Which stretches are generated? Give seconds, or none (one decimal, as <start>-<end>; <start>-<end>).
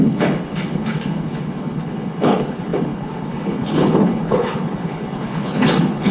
0.0-6.1